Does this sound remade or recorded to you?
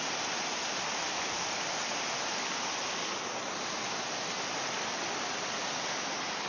recorded